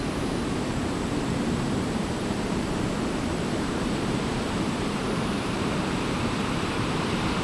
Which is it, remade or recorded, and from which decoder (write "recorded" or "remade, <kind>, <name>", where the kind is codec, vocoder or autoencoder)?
remade, vocoder, BigVGAN v2